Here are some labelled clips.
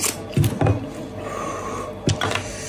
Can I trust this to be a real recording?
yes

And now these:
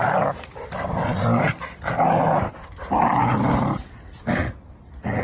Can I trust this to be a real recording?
yes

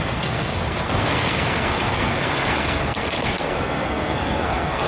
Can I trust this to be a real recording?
no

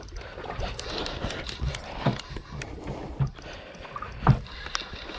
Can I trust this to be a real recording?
yes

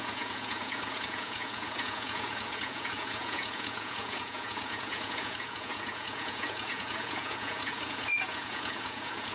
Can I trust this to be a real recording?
no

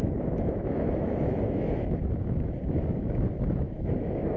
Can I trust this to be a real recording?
no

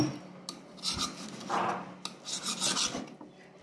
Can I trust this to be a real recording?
yes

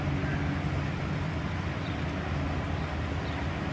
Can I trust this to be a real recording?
yes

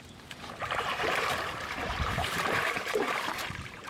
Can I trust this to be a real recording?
no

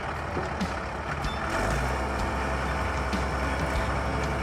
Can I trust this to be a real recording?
yes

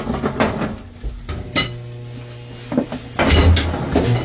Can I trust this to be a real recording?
yes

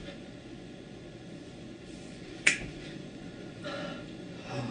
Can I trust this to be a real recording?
no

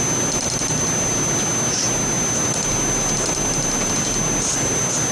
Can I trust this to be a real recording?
yes